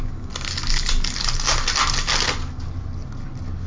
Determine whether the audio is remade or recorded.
recorded